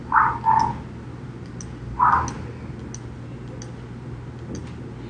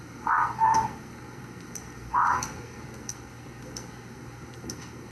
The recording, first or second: first